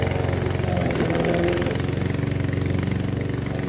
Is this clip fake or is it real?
real